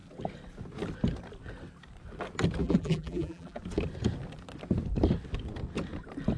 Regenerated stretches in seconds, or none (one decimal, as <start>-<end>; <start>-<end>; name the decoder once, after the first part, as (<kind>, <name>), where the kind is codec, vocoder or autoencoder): 2.6-3.6 (vocoder, BigVGAN v2)

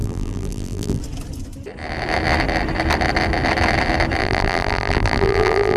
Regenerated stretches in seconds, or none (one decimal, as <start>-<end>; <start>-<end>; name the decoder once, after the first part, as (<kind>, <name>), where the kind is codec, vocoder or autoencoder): 0.0-1.0 (vocoder, BigVGAN v2); 4.2-5.8

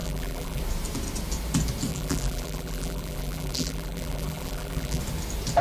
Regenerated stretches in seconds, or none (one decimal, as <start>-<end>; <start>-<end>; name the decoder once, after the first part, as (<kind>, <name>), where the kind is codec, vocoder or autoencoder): 0.0-0.6 (vocoder, BigVGAN v2); 1.9-5.0

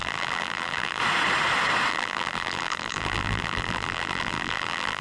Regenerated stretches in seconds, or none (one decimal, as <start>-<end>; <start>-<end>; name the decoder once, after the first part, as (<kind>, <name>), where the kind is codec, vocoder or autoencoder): 0.0-1.0 (vocoder, BigVGAN v2); 1.9-5.0

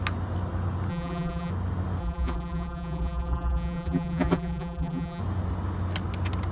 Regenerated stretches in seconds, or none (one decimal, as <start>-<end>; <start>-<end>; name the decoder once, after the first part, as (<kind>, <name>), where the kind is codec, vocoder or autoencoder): 0.9-1.5 (vocoder, BigVGAN v2); 2.0-5.2

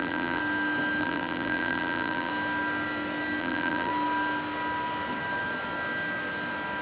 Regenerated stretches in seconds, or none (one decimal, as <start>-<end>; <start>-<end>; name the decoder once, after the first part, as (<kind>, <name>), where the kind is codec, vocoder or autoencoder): 0.0-0.4 (vocoder, BigVGAN v2); 1.0-2.3; 3.4-3.9

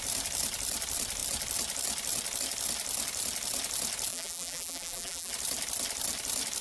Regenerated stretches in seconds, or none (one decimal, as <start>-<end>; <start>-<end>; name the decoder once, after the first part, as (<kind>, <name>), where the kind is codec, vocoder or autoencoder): 4.1-5.3 (vocoder, BigVGAN v2)

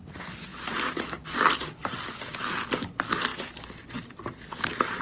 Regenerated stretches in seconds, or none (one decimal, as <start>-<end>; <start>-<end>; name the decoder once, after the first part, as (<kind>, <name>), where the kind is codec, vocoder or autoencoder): none